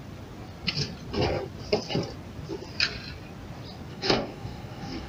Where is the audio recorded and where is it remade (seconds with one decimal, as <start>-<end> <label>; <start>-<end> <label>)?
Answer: 0.0-3.9 recorded; 3.9-5.1 remade